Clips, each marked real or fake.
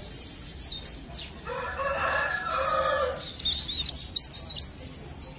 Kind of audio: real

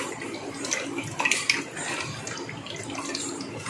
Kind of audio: real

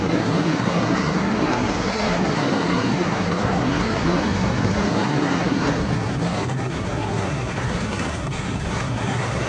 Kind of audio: fake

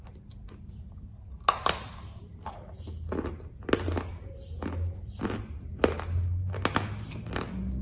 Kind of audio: real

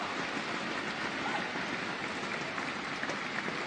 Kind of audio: real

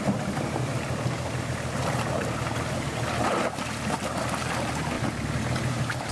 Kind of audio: real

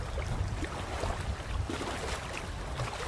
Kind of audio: real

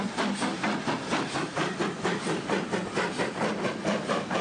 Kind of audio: real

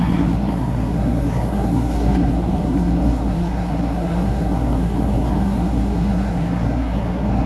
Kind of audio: fake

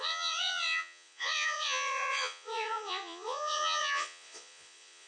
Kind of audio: fake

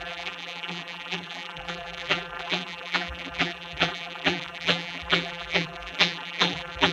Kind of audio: fake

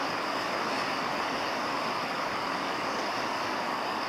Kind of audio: fake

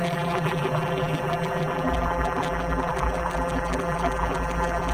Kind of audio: fake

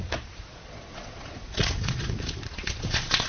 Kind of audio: fake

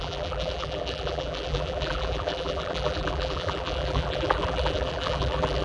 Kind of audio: fake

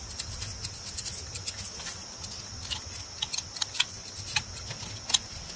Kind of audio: real